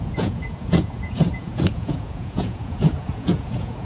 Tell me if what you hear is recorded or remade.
remade